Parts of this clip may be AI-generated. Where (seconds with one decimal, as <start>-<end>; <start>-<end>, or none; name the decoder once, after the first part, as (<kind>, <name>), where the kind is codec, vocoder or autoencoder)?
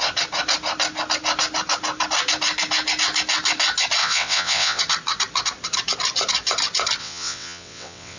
4.0-4.8 (vocoder, WaveNeXt); 7.0-8.2